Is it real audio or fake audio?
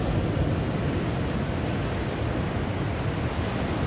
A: real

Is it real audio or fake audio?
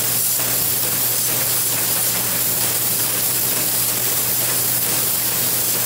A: real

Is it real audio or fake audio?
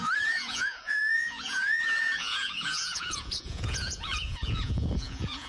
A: fake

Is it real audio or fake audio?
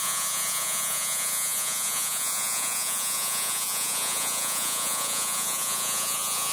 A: fake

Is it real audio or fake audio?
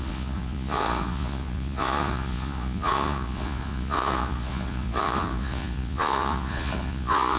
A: fake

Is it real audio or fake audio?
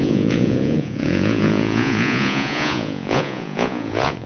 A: fake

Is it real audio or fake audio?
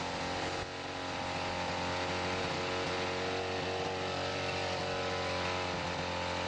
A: real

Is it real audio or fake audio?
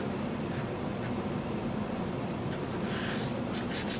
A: real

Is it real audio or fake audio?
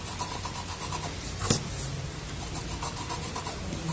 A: real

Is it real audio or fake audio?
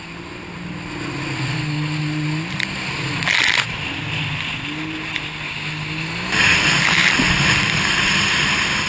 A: real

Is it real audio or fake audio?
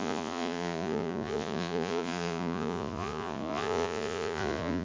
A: fake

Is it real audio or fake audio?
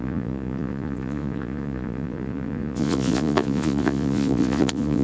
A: fake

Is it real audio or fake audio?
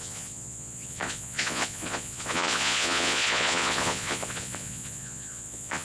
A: fake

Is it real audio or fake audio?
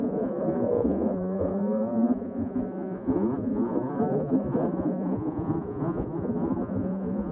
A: fake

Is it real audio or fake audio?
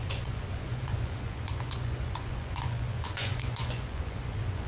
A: fake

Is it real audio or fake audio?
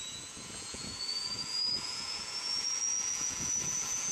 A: fake